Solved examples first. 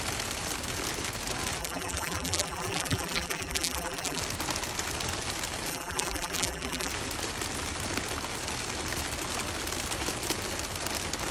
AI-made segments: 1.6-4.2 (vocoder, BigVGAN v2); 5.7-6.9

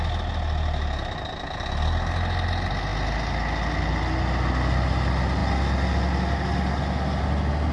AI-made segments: none